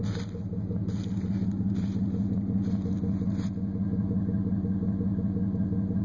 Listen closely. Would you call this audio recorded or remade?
recorded